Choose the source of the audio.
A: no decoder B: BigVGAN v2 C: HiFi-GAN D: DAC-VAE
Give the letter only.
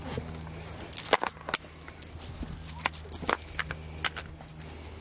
A